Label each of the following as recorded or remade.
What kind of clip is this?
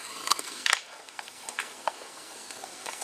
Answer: remade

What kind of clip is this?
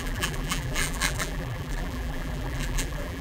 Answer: remade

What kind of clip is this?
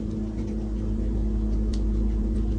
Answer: recorded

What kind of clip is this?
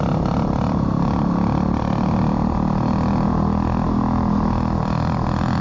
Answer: recorded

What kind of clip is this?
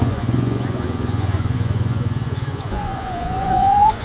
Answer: remade